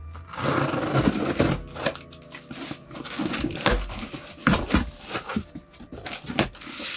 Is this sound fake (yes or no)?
no